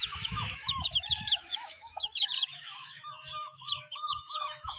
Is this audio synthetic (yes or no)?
yes